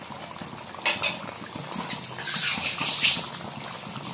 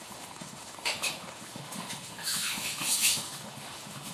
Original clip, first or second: first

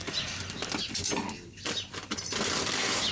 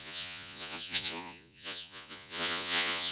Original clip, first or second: first